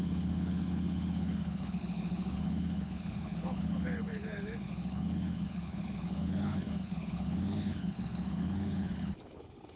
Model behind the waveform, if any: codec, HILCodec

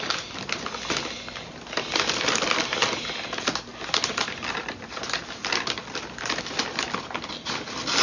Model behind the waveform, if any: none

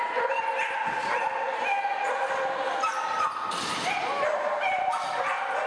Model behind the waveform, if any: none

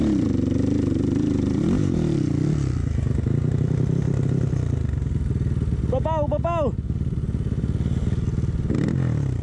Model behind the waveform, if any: none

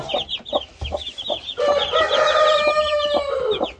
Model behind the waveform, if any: vocoder, BigVGAN v2